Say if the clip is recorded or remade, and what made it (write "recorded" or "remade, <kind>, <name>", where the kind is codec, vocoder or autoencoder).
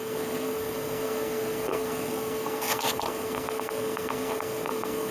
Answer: remade, codec, SNAC